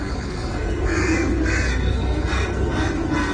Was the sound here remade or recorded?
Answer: remade